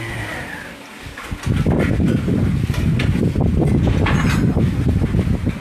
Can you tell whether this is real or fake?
real